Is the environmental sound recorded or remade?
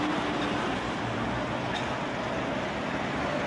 recorded